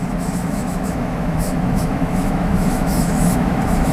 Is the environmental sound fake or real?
fake